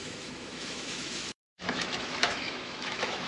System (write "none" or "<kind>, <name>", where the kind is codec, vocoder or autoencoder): autoencoder, DAC-VAE